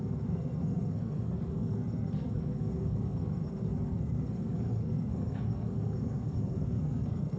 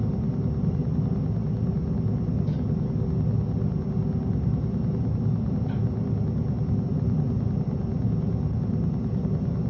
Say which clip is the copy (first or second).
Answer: first